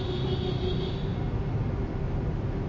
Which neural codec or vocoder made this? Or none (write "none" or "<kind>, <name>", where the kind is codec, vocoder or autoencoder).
none